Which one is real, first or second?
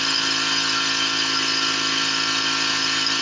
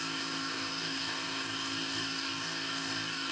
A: first